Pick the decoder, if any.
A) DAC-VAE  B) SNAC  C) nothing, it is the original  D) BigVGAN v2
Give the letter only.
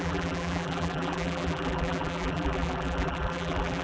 D